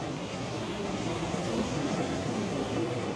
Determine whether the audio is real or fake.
fake